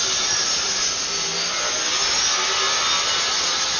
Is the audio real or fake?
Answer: real